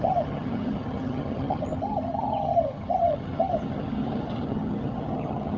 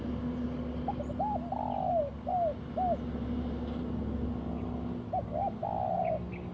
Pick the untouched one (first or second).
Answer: second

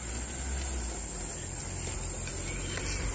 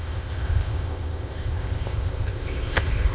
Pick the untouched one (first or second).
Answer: first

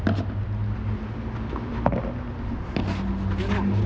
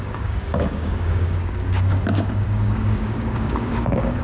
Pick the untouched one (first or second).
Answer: first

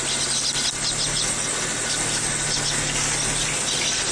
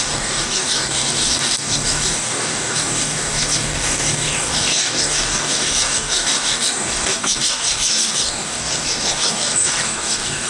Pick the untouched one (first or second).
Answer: first